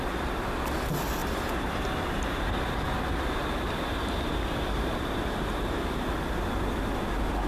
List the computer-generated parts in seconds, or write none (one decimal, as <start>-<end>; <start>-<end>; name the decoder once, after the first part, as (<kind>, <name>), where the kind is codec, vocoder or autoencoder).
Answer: 1.2-5.7 (vocoder, BigVGAN v2)